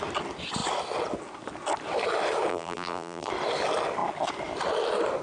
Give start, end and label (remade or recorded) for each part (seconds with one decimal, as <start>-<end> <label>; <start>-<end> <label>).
0.0-2.5 recorded; 2.5-3.3 remade; 3.3-5.2 recorded